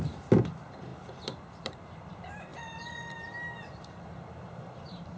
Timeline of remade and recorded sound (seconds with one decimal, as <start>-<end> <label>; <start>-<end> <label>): 0.0-2.5 remade; 2.5-3.6 recorded; 3.6-5.2 remade